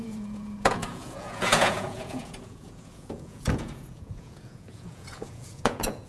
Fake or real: fake